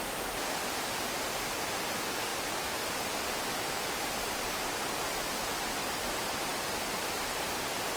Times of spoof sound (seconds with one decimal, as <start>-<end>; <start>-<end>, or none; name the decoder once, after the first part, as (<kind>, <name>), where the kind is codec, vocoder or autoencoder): 2.3-4.7 (vocoder, BigVGAN v2)